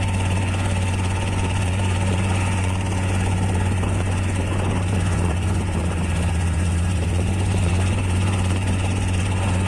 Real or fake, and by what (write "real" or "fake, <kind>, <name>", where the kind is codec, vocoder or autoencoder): fake, vocoder, Vocos